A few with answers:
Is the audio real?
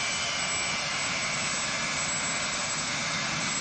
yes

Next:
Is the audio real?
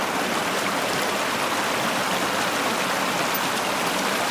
yes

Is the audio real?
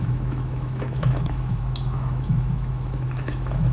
no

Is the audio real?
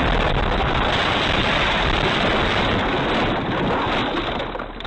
yes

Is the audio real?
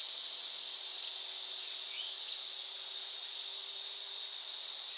yes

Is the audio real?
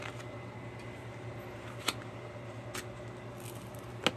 yes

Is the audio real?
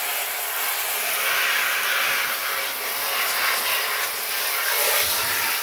yes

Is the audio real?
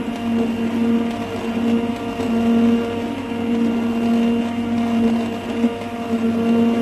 yes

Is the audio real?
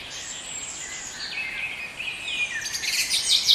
yes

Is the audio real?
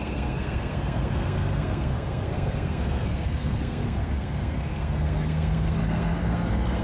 no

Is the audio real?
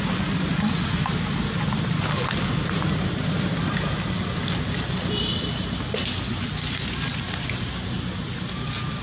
yes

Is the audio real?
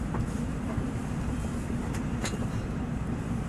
no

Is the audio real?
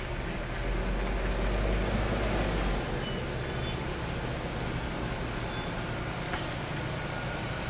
yes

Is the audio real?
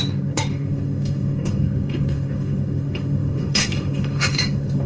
no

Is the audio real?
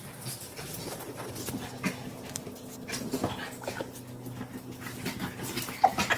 yes